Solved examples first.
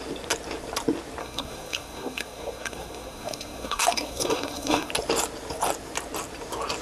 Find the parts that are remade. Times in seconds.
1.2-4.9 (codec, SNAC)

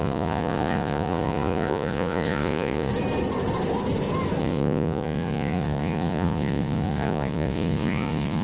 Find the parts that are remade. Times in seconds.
0.0-2.9 (vocoder, Vocos); 4.4-8.4

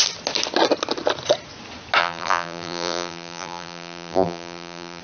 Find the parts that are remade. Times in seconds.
2.0-5.0 (vocoder, BigVGAN v2)

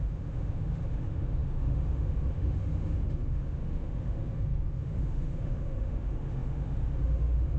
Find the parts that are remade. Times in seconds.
0.0-7.6 (autoencoder, DAC-VAE)

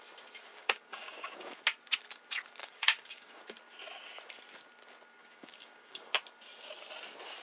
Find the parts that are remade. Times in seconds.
0.5-1.6 (codec, DAC); 2.6-3.4; 5.2-6.1

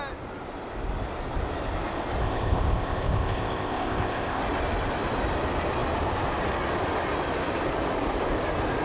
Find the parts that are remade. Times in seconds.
2.2-4.4 (codec, ZipCodec)

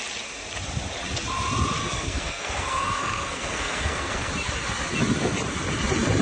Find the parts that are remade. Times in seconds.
1.8-4.3 (codec, SNAC)